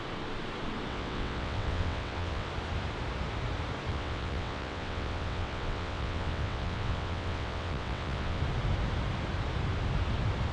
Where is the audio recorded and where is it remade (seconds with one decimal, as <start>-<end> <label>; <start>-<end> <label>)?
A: 0.0-0.9 recorded; 0.9-2.5 remade; 2.5-3.9 recorded; 3.9-8.4 remade; 8.4-10.5 recorded